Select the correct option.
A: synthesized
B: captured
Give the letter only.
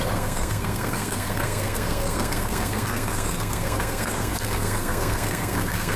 A